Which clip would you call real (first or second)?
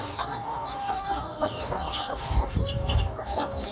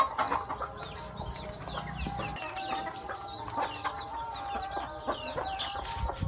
second